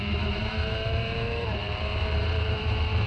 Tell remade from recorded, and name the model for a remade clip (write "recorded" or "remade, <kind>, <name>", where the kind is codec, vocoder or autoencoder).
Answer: remade, vocoder, BigVGAN v2